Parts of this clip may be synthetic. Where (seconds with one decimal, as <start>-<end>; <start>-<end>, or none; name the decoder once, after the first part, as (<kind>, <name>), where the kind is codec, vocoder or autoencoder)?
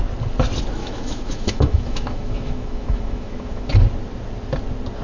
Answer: 0.8-3.7 (autoencoder, DAC-VAE)